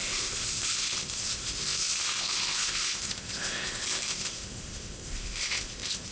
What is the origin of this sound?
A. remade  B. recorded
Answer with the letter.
A